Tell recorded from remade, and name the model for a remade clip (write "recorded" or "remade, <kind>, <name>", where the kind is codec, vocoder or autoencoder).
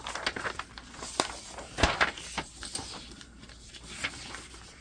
recorded